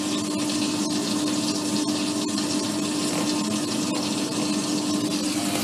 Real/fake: real